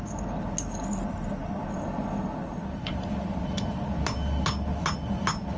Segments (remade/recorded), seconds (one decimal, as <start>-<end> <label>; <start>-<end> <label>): 0.0-5.6 recorded